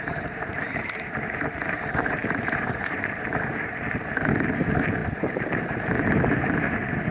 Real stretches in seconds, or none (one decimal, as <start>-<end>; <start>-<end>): none